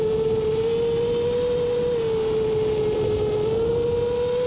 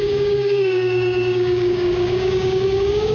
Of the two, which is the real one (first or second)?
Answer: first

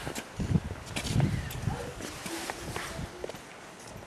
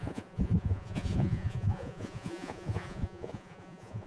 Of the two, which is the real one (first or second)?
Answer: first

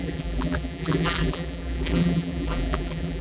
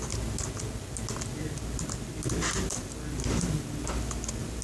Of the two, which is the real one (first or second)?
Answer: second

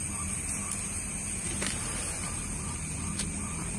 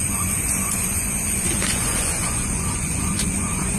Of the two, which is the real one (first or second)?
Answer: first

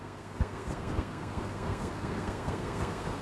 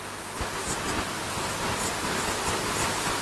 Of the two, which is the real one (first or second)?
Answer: second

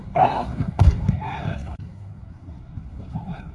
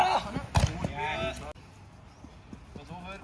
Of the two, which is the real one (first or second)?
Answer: second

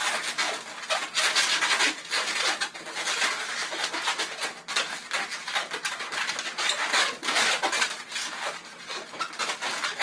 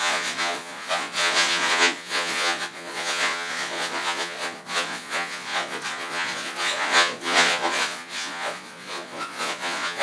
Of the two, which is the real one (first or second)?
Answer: first